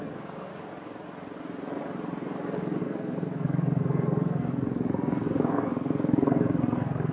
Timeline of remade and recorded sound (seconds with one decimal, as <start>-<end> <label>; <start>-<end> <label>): 0.0-0.5 remade; 0.5-2.8 recorded; 2.8-7.1 remade